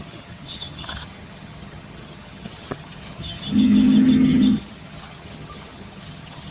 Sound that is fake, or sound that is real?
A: fake